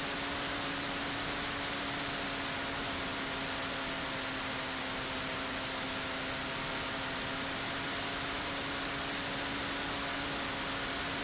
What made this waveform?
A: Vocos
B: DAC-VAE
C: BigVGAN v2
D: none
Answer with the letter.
D